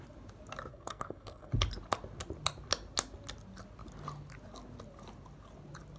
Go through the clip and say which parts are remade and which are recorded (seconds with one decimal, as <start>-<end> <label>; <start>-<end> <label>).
0.0-0.7 recorded; 0.7-1.5 remade; 1.5-6.0 recorded